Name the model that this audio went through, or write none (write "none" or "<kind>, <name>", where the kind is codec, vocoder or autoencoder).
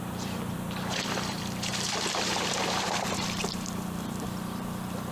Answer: vocoder, BigVGAN v2